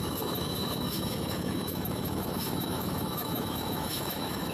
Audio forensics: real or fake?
fake